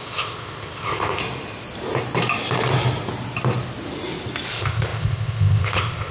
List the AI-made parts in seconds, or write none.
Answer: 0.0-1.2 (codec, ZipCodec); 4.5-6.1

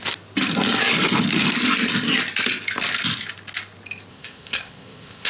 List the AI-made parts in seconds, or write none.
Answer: 4.1-5.3 (codec, ZipCodec)

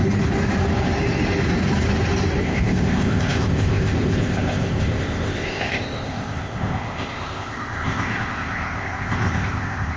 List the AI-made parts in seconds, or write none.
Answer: 2.4-10.0 (codec, ZipCodec)

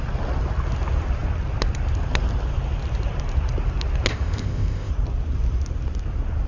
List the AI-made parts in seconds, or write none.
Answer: 4.1-4.9 (codec, ZipCodec)

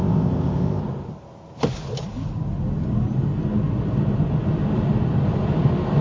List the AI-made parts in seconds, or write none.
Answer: 0.0-0.8 (codec, ZipCodec)

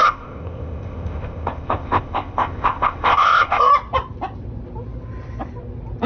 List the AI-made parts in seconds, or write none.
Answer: 0.0-3.7 (codec, ZipCodec)

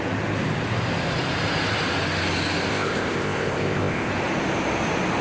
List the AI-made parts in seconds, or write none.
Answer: 2.7-4.1 (codec, ZipCodec)

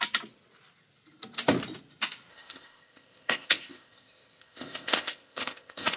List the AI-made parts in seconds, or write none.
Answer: 2.3-6.0 (codec, ZipCodec)